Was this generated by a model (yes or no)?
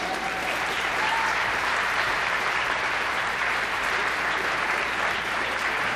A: yes